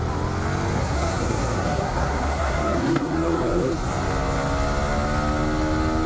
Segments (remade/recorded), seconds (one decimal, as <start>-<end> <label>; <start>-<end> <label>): 0.0-0.8 recorded; 0.8-3.7 remade; 3.7-6.1 recorded